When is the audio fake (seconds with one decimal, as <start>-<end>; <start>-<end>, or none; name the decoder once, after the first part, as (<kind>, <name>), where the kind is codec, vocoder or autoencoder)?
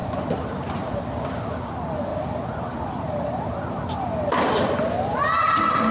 0.0-1.0 (vocoder, BigVGAN v2); 2.1-4.8